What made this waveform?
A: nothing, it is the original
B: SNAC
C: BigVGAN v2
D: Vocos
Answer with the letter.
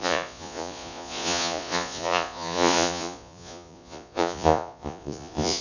D